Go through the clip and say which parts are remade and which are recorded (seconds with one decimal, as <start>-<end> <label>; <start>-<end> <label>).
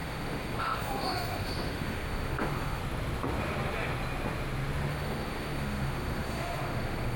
0.0-2.8 remade; 2.8-4.9 recorded; 4.9-7.2 remade